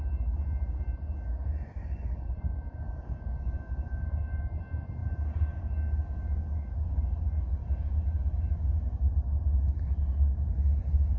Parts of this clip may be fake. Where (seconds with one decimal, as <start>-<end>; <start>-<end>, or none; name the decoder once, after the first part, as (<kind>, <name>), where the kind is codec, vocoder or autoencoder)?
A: 1.8-4.6 (codec, DAC); 6.3-7.0